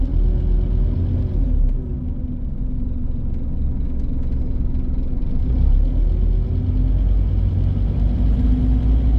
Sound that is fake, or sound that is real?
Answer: real